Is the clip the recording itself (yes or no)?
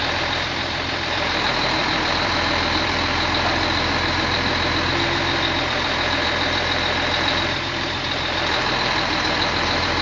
no